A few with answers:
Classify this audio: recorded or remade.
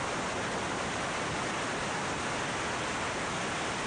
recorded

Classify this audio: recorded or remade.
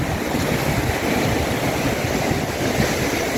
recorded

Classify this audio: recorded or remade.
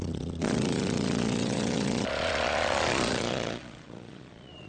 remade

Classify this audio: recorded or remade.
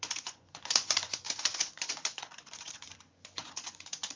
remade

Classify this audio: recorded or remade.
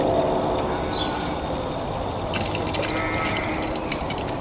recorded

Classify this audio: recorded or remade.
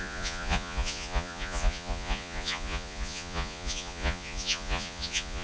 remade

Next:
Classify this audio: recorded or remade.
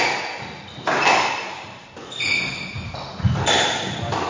recorded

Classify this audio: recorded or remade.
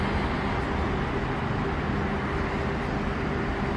recorded